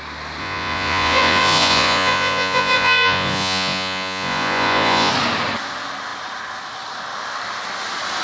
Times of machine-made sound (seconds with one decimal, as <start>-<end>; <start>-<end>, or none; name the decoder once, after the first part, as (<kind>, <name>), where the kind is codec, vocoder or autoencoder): 0.4-5.1 (vocoder, Vocos)